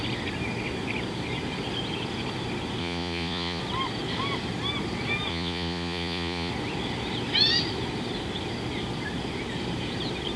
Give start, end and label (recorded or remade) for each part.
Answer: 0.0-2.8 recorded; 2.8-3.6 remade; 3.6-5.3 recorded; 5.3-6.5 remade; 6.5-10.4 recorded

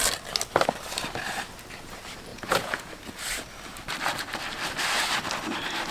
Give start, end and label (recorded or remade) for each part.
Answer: 0.0-2.3 recorded; 2.3-2.9 remade; 2.9-5.9 recorded

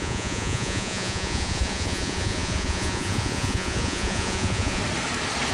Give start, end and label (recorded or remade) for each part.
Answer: 0.0-4.8 remade; 4.8-5.5 recorded

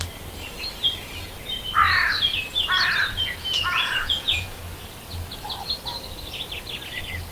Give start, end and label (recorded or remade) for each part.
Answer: 0.0-3.0 recorded; 3.0-4.6 remade; 4.6-7.3 recorded

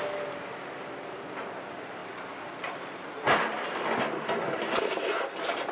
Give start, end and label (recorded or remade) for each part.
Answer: 0.0-5.7 recorded

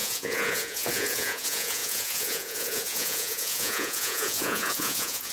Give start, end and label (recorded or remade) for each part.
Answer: 0.0-5.3 remade

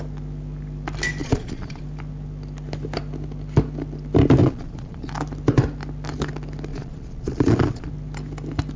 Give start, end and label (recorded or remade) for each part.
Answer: 0.0-1.2 recorded; 1.2-1.8 remade; 1.8-4.4 recorded; 4.4-5.1 remade; 5.1-6.7 recorded; 6.7-7.9 remade; 7.9-8.8 recorded

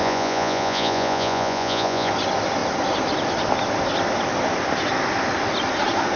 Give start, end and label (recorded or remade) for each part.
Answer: 0.0-2.1 remade; 2.1-6.2 recorded